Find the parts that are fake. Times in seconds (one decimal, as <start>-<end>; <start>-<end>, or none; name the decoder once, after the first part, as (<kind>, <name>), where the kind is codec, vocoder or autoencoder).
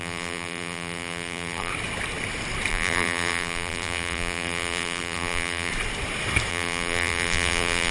0.0-1.7 (vocoder, BigVGAN v2); 2.7-5.7; 6.5-7.9